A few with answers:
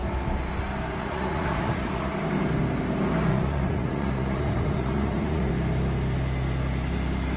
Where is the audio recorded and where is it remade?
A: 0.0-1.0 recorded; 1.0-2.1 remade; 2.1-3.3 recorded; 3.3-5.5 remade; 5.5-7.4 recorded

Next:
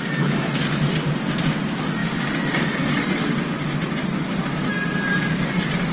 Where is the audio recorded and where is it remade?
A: 0.0-5.9 recorded

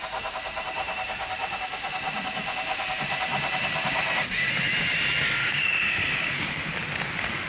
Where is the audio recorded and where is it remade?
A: 0.0-5.4 recorded; 5.4-6.7 remade; 6.7-7.5 recorded

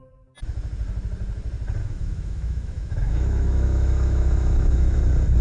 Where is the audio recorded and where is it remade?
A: 0.0-1.8 recorded; 1.8-5.0 remade; 5.0-5.4 recorded